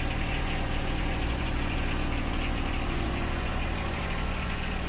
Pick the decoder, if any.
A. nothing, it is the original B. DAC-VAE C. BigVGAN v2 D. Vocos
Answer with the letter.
D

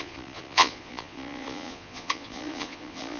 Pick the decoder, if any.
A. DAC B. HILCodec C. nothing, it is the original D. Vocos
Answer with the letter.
D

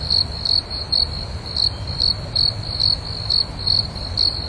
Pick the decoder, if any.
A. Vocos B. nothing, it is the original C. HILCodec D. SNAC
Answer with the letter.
B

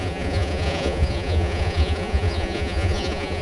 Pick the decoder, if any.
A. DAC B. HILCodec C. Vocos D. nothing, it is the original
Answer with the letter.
C